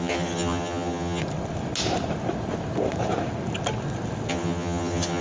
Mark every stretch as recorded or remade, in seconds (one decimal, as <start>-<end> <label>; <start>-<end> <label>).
0.0-1.2 remade; 1.2-4.3 recorded; 4.3-5.2 remade